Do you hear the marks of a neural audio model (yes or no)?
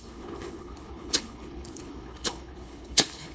yes